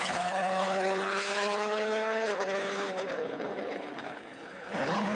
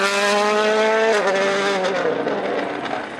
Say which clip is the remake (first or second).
first